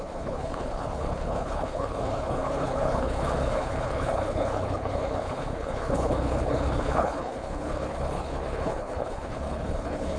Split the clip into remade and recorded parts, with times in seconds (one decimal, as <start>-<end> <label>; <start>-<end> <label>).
0.0-10.2 remade